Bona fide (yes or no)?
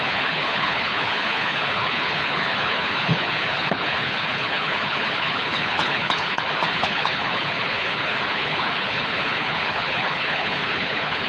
no